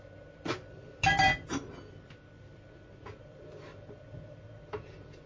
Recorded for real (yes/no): yes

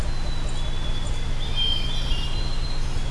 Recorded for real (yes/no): yes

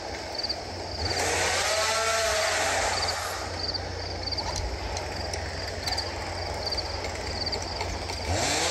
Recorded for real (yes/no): yes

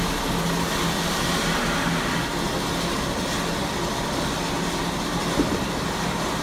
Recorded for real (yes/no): yes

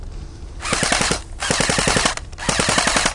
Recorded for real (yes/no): yes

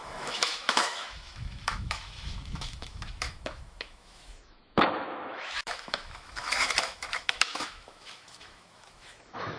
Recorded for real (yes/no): no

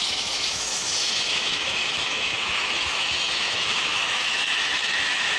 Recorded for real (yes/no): no